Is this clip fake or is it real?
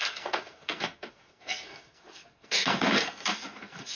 fake